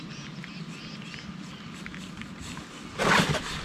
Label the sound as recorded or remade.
recorded